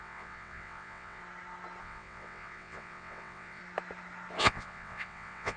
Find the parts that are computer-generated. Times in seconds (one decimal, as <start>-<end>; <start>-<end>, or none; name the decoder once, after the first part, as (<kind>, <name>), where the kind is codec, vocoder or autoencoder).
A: 0.0-1.2 (vocoder, WaveNeXt); 1.8-3.6; 4.4-5.6